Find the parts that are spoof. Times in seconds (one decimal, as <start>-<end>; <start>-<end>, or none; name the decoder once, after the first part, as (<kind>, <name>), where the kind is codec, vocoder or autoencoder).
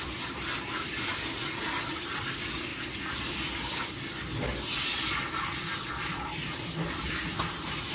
none